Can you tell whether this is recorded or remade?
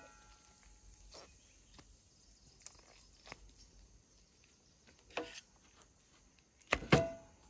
recorded